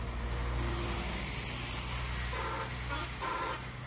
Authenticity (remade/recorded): recorded